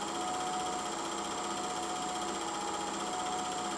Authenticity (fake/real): real